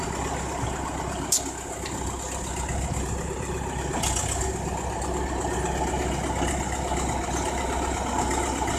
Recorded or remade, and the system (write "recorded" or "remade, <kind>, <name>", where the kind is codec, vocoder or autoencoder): recorded